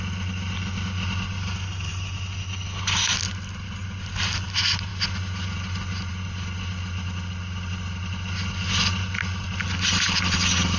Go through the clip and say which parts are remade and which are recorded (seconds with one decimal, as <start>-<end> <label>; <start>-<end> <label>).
0.0-10.8 recorded